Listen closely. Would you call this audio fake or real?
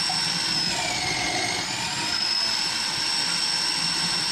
real